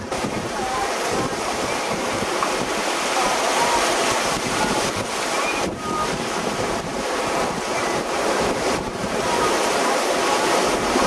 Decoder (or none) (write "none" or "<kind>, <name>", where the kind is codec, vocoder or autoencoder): vocoder, BigVGAN v2